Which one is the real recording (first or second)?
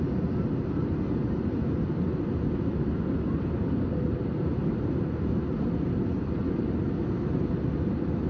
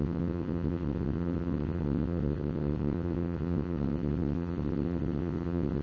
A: first